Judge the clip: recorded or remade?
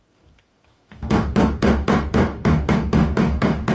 remade